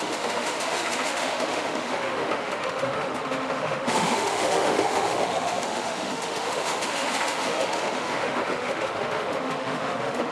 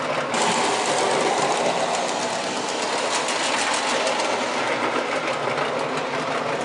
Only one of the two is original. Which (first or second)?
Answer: second